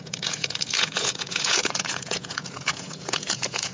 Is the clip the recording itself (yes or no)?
no